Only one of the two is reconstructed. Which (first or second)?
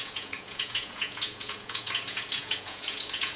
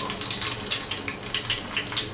first